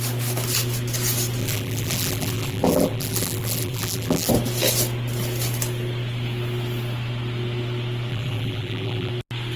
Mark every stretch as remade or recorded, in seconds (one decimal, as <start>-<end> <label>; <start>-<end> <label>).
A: 0.0-1.4 recorded; 1.4-4.3 remade; 4.3-8.1 recorded; 8.1-9.1 remade; 9.1-9.6 recorded